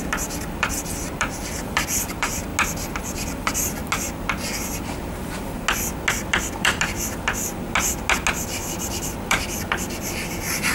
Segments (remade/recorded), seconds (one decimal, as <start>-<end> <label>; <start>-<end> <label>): 0.0-2.5 remade; 2.5-3.0 recorded; 3.0-3.8 remade; 3.8-6.1 recorded; 6.1-7.4 remade; 7.4-8.9 recorded; 8.9-10.7 remade